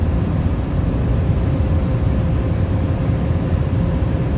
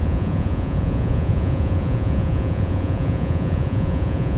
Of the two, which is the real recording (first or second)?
first